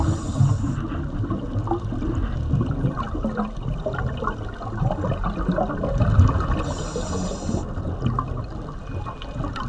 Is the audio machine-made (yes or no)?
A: no